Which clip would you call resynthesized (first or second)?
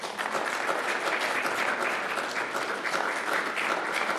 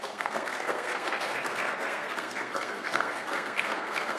second